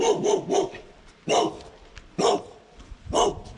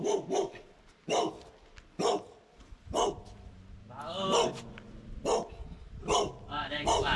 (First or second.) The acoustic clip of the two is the second